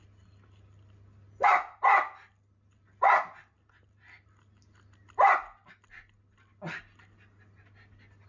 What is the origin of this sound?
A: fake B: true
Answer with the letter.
B